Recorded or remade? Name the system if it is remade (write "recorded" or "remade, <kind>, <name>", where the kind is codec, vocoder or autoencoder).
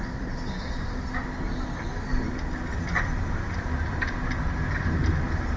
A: recorded